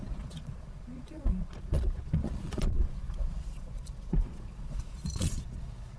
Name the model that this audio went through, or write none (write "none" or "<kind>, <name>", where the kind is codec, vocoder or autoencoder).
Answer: vocoder, Vocos